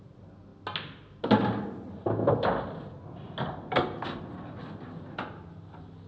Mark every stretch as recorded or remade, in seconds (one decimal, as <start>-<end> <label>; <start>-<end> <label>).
0.0-6.1 recorded